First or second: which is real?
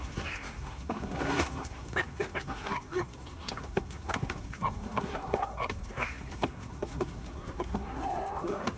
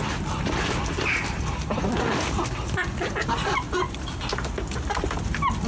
second